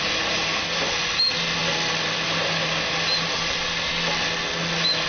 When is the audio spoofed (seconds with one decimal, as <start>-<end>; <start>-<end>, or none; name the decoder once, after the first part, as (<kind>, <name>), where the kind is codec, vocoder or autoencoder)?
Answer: none